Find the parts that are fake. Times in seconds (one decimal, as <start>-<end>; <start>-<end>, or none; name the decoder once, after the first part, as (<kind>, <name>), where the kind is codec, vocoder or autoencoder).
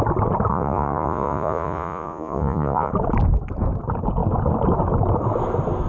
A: 0.5-2.9 (vocoder, Vocos)